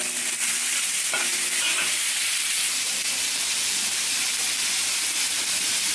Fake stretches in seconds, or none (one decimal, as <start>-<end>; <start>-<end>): none